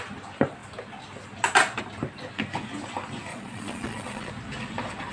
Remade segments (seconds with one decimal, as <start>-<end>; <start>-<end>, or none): 3.3-4.3

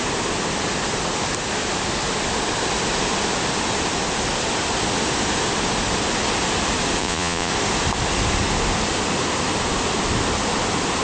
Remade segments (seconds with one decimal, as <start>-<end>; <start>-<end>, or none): 7.0-7.5

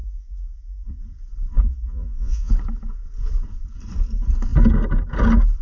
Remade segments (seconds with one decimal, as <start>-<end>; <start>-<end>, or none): 0.0-1.0; 1.7-2.5

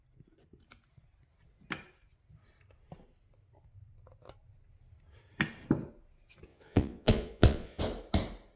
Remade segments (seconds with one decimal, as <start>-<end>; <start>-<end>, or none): 6.5-7.8